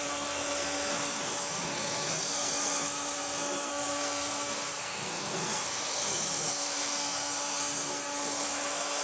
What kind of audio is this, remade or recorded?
remade